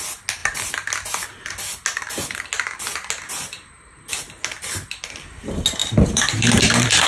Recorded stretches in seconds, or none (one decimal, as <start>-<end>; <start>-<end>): 0.0-5.8; 6.6-7.1